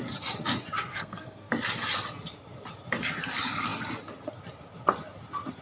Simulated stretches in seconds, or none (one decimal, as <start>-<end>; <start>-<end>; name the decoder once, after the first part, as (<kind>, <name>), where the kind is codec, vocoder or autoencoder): 0.9-1.5 (codec, SNAC)